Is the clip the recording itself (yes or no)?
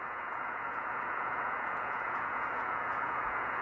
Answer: no